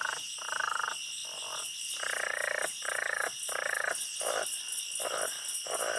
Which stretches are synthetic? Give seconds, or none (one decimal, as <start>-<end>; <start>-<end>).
none